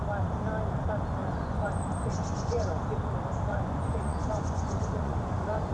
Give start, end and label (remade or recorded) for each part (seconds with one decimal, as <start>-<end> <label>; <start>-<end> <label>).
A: 0.0-1.2 recorded; 1.2-1.7 remade; 1.7-2.1 recorded; 2.1-2.7 remade; 2.7-3.5 recorded; 3.5-5.7 remade